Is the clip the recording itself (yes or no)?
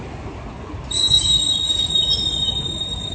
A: yes